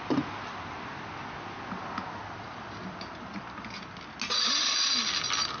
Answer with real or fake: real